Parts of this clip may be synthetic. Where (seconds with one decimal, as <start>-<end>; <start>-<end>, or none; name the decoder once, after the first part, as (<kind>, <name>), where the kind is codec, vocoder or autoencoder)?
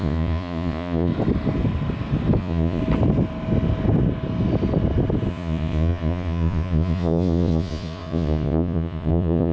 0.0-1.1 (vocoder, Vocos); 2.4-2.8; 5.3-9.5